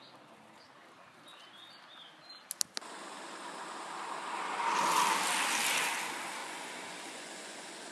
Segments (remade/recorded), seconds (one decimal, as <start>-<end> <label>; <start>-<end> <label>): 0.0-6.4 recorded; 6.4-7.9 remade